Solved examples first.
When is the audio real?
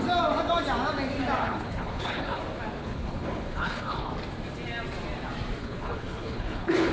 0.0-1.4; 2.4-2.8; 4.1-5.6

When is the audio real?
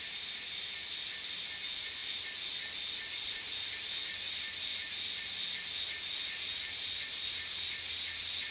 0.0-8.5